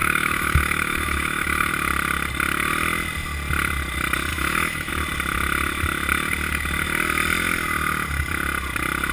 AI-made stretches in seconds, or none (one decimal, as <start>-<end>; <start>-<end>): 0.0-1.7; 4.3-4.9